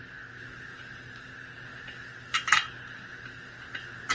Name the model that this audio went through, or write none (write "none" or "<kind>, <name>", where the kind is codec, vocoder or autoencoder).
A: none